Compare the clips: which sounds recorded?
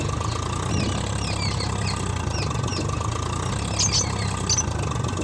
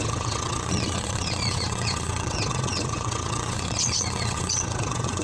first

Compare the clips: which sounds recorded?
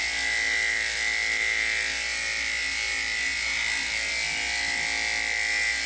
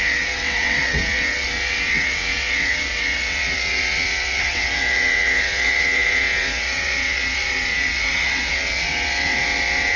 first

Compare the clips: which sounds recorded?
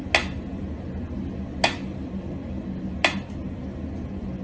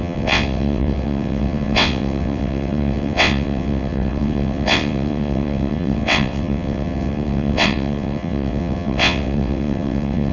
first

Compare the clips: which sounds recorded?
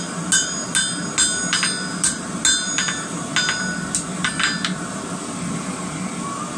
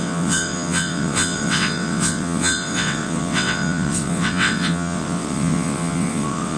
first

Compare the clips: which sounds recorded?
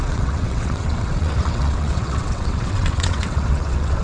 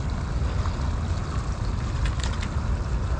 second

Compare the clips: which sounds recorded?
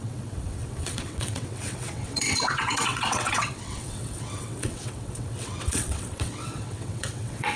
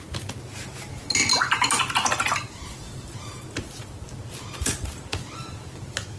second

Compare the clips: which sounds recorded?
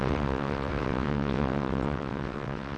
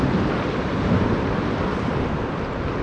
second